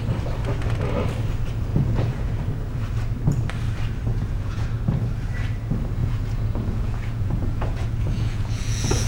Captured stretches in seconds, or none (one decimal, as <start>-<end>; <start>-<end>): 0.0-1.7; 2.3-4.1; 4.7-6.0